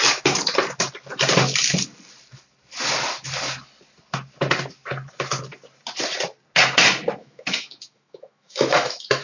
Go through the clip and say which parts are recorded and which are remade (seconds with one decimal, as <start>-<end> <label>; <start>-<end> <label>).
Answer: 0.0-7.2 recorded; 7.2-9.2 remade